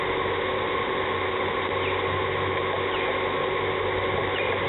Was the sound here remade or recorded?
recorded